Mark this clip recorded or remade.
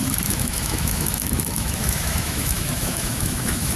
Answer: remade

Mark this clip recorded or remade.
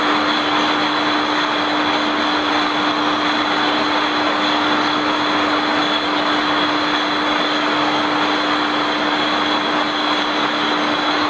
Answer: recorded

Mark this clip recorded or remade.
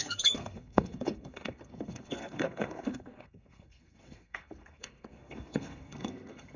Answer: remade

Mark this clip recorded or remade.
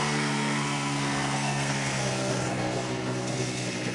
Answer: remade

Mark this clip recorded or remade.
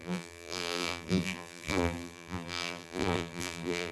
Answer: remade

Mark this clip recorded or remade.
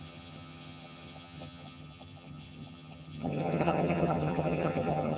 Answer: remade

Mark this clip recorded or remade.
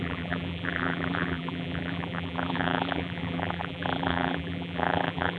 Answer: remade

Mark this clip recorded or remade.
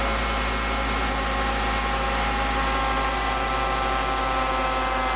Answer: recorded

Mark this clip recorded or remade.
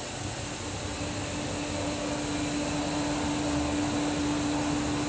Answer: recorded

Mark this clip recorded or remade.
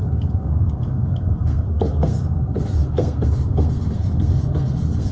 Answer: remade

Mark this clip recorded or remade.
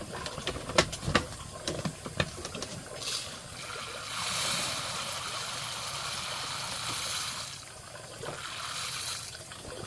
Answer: recorded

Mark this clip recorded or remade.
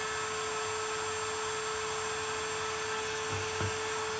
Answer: recorded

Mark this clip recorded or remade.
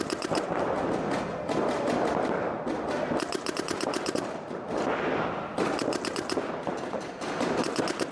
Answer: recorded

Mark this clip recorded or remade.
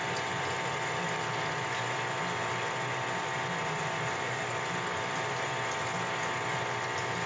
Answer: recorded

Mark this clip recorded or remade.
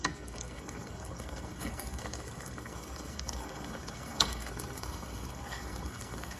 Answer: remade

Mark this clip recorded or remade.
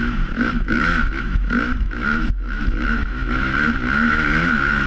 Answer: remade